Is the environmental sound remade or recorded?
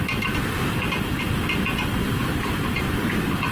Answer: recorded